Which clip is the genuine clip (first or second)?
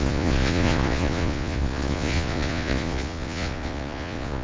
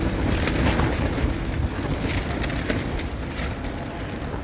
second